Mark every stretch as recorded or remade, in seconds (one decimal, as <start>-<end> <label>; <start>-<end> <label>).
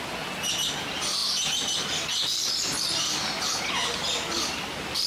0.0-5.1 recorded